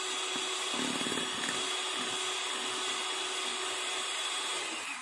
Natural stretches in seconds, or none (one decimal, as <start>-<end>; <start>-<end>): 0.0-3.5